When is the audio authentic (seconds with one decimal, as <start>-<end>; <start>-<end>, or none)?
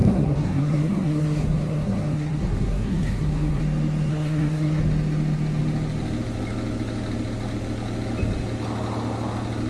3.6-4.1; 4.8-9.7